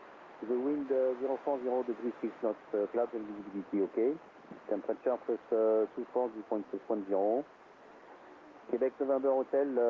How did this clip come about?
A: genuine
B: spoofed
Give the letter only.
A